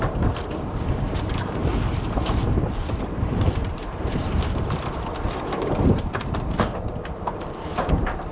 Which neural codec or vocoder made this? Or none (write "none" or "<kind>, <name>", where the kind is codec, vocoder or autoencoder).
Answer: vocoder, BigVGAN v2